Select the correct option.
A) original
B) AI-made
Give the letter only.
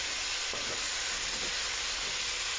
A